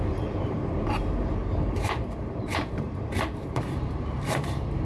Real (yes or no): no